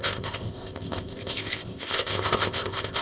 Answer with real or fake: fake